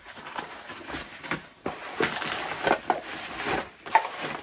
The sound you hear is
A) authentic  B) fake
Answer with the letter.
A